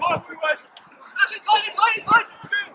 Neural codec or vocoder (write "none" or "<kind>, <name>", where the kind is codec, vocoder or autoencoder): none